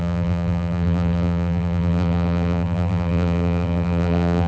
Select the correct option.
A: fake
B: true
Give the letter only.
A